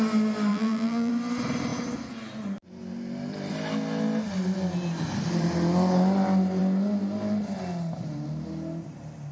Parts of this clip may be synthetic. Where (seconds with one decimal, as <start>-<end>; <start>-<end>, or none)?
0.5-1.1